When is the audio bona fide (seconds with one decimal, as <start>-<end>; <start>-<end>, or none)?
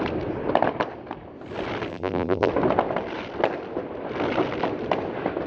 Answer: 0.0-1.9; 2.5-5.5